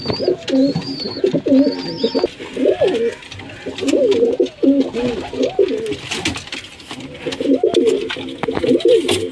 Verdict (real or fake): real